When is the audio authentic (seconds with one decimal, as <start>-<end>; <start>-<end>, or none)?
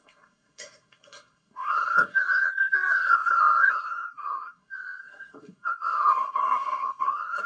none